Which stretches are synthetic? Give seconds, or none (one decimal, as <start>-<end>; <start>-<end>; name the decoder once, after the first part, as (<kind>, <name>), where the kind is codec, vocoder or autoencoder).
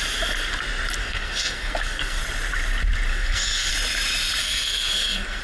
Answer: 1.0-2.2 (codec, SNAC); 3.1-3.7; 4.4-5.4